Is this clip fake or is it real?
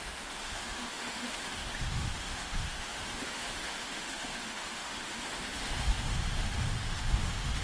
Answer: fake